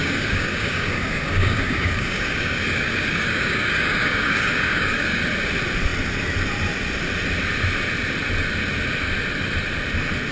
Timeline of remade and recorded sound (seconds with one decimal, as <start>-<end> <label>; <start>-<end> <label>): 0.0-5.2 remade; 5.2-10.3 recorded